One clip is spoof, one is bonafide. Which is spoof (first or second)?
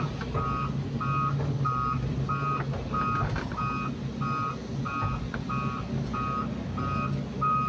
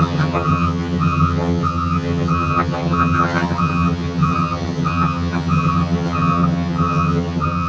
second